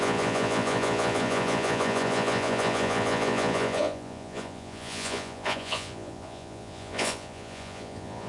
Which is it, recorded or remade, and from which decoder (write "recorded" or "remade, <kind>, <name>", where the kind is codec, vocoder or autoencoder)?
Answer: remade, vocoder, Vocos